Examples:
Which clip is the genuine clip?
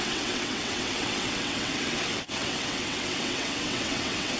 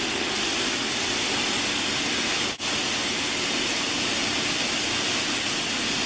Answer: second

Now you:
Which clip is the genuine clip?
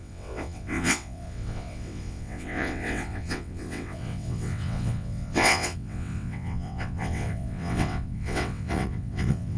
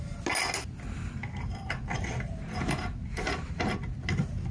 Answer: second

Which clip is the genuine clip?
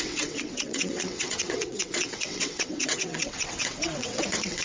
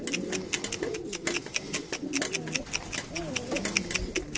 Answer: second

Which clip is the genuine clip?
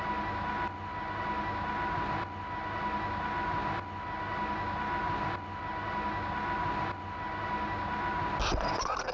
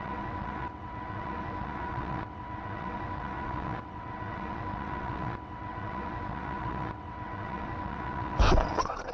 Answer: first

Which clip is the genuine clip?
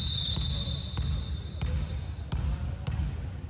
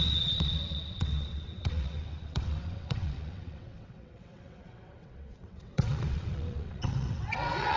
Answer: first